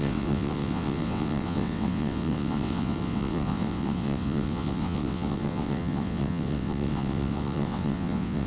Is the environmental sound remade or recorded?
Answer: remade